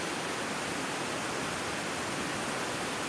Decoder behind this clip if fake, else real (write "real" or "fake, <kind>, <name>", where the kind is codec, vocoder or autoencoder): real